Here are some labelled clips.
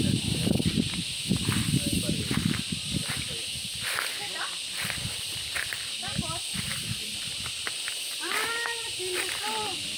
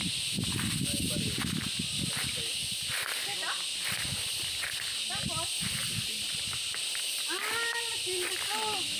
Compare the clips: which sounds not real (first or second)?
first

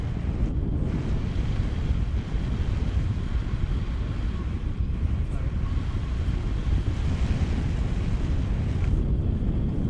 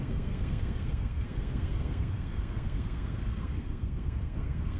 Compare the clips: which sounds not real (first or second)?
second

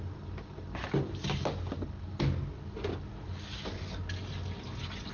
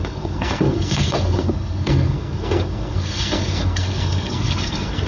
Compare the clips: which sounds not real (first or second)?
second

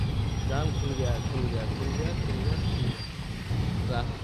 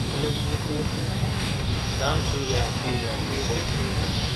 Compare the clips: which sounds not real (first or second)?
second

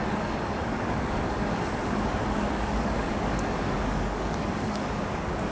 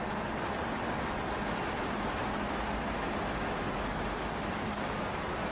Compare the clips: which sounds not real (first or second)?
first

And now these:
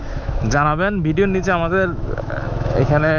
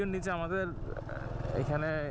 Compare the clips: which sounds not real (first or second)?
first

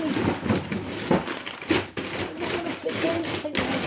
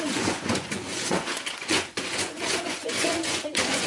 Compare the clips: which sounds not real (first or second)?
second